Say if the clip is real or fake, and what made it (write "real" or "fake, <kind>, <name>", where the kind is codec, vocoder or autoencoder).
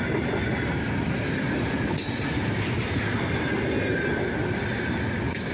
real